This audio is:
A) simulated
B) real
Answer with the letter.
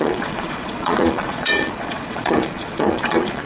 A